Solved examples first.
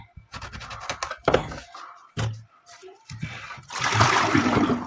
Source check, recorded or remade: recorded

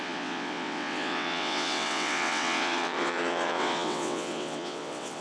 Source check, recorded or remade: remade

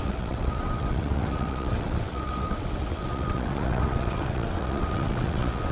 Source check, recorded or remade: remade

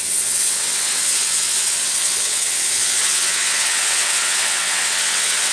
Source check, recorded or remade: remade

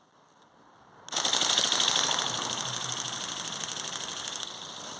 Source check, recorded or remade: recorded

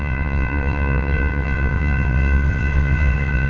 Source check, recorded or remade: remade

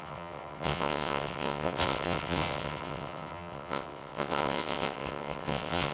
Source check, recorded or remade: remade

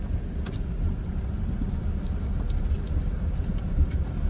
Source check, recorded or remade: recorded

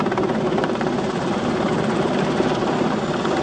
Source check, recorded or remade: recorded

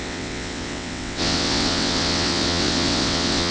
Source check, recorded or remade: remade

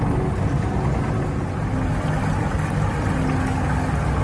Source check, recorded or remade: recorded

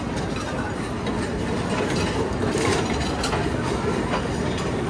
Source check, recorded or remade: recorded